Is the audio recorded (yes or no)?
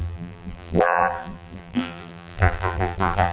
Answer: no